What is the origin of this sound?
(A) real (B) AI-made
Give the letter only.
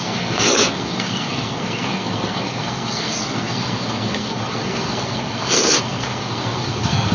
B